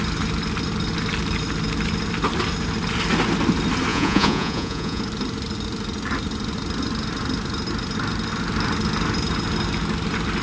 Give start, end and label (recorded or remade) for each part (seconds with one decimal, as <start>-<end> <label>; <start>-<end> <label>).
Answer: 0.0-3.9 recorded; 3.9-5.0 remade; 5.0-10.4 recorded